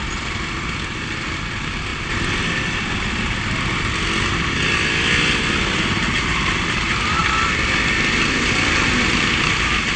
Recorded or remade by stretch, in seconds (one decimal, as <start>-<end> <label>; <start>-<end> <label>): 0.0-10.0 recorded